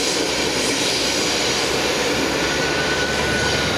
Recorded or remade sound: recorded